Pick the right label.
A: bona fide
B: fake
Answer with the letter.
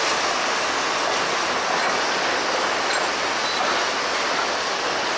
A